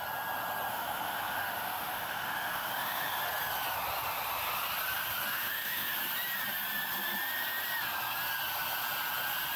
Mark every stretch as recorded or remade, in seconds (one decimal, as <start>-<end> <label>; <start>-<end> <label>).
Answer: 0.0-0.7 recorded; 0.7-3.2 remade; 3.2-5.3 recorded; 5.3-5.9 remade; 5.9-9.6 recorded